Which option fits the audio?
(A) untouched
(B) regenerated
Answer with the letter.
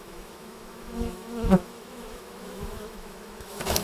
B